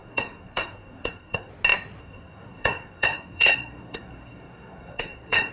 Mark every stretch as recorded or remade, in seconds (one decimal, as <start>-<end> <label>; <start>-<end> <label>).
0.0-1.5 remade; 1.5-2.0 recorded; 2.0-5.5 remade